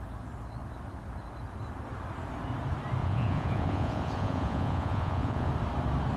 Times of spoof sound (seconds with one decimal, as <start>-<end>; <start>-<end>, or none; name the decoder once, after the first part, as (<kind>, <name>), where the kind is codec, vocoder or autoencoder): 3.0-5.5 (vocoder, Vocos)

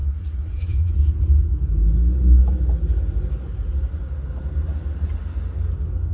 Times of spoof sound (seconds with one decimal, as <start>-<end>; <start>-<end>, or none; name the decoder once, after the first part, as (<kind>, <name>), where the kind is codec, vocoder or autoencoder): 0.0-1.2 (vocoder, Vocos)